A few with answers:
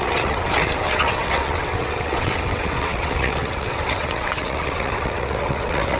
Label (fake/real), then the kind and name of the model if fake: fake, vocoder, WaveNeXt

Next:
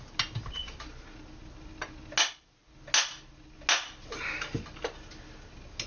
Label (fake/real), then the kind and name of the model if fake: real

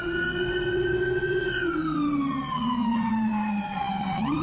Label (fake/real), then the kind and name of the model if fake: fake, vocoder, WaveNeXt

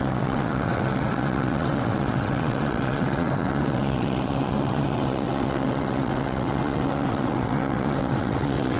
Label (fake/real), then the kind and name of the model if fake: fake, vocoder, WaveNeXt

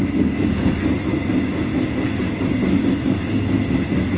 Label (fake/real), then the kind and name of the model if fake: real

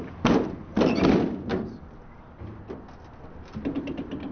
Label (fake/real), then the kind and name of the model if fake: real